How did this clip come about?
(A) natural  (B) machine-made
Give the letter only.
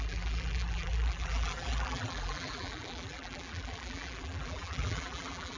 B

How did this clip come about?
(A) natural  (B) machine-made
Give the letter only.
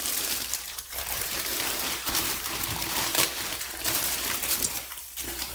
B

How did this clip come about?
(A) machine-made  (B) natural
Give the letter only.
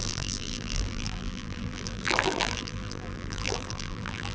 A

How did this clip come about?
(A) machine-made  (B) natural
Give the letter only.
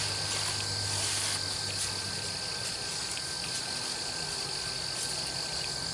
B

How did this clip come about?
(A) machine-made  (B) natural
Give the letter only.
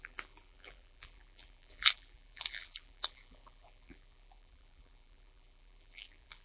A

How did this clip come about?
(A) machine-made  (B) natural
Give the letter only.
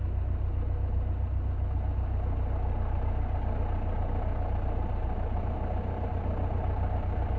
B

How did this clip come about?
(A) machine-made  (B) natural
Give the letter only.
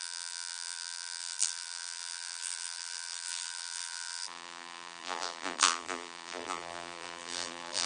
A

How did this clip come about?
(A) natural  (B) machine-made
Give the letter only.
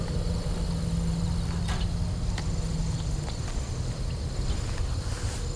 A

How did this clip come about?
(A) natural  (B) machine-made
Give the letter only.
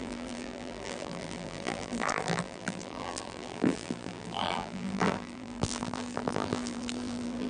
B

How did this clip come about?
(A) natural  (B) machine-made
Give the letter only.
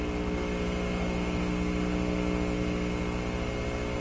A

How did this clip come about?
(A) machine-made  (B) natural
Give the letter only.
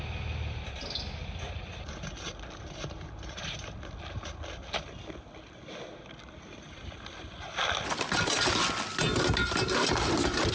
B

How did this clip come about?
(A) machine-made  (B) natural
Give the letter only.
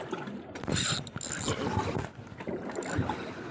B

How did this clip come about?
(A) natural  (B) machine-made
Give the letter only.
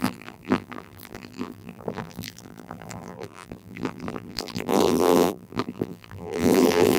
B